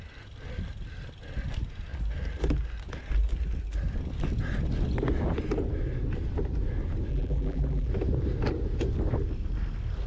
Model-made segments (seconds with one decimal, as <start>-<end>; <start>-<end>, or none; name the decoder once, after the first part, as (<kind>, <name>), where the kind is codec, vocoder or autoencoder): 7.1-7.9 (vocoder, BigVGAN v2)